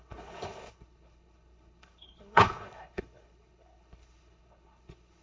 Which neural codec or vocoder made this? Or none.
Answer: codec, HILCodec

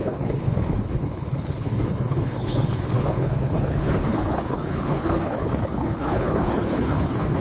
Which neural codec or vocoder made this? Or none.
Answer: codec, HILCodec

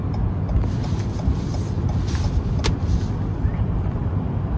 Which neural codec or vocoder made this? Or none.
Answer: none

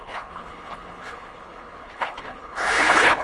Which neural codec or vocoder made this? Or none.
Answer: codec, HILCodec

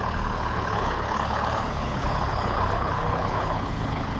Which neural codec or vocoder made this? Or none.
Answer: codec, HILCodec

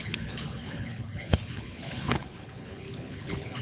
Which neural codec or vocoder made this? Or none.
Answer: codec, HILCodec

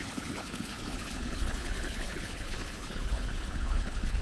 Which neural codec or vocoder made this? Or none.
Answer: codec, HILCodec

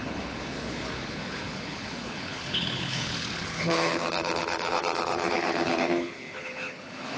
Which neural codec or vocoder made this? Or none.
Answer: codec, HILCodec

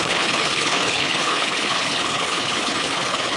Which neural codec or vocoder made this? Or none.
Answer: codec, HILCodec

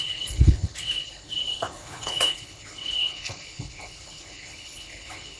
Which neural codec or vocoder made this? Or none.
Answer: codec, HILCodec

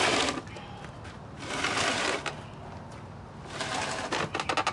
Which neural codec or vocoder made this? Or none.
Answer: none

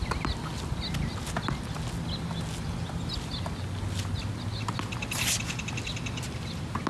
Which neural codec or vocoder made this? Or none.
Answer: none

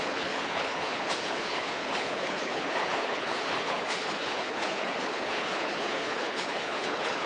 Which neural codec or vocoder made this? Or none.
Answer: codec, HILCodec